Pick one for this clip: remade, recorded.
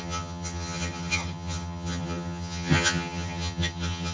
remade